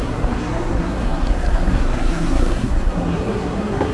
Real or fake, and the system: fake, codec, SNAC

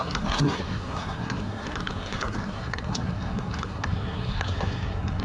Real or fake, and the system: fake, codec, SNAC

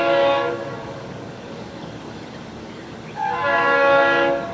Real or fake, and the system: fake, codec, DAC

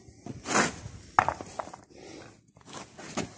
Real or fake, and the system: real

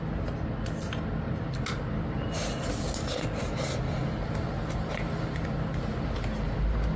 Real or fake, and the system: real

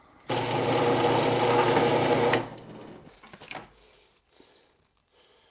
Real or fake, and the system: real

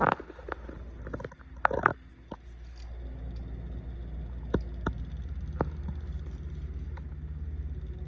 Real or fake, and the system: real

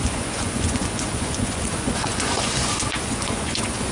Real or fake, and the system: fake, vocoder, Vocos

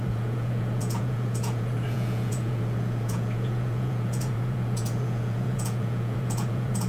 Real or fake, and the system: fake, vocoder, Vocos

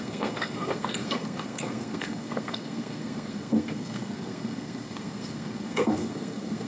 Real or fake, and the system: fake, codec, SNAC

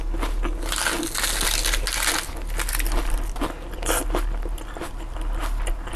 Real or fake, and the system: real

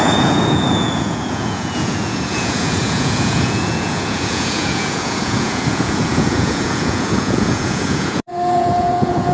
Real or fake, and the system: fake, vocoder, Vocos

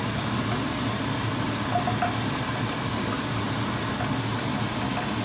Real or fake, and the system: real